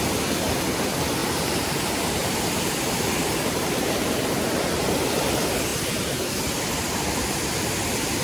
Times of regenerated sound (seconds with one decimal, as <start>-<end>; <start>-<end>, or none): 1.2-4.3; 5.7-6.8